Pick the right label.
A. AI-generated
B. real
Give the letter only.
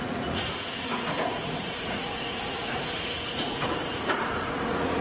A